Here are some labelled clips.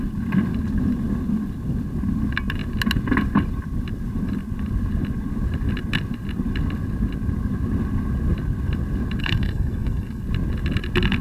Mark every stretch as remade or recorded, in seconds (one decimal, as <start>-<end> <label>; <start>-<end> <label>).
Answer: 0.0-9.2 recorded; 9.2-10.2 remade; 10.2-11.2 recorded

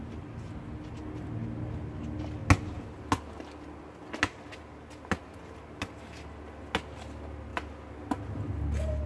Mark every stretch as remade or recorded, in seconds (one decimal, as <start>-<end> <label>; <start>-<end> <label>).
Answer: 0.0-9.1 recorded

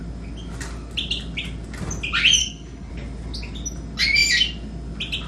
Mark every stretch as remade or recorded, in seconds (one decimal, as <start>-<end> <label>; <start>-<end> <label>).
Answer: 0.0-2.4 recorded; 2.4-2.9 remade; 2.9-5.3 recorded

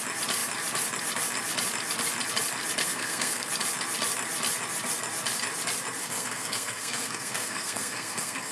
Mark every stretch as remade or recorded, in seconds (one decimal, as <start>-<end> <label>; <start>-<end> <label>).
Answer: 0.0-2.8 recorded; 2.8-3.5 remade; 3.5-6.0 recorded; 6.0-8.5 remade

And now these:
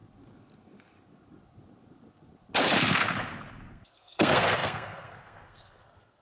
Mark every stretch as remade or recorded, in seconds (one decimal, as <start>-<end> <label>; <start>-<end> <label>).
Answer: 0.0-3.7 recorded; 3.7-6.2 remade

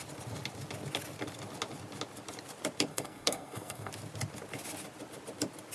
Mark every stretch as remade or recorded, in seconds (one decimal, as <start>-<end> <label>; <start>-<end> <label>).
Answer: 0.0-2.9 recorded; 2.9-3.9 remade; 3.9-5.7 recorded

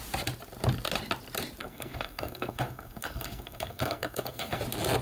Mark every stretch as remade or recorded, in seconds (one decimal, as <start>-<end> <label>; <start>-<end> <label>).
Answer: 0.0-1.6 recorded; 1.6-4.6 remade; 4.6-5.0 recorded

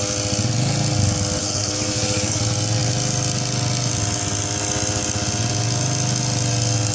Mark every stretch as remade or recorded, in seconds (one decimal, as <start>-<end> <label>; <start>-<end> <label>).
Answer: 0.0-1.4 recorded; 1.4-2.4 remade; 2.4-6.9 recorded